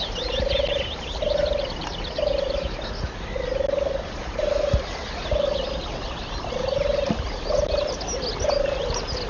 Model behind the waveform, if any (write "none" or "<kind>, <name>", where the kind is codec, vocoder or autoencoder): none